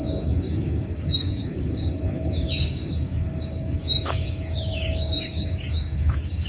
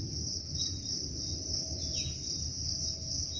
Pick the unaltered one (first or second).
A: second